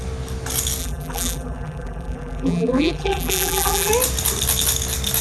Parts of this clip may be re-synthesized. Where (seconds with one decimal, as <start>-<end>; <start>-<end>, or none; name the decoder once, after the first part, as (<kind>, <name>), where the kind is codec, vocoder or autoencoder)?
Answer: 0.8-3.9 (vocoder, BigVGAN v2)